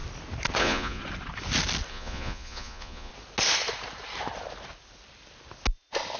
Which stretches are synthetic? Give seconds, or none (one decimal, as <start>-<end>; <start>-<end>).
0.6-1.0; 1.9-3.1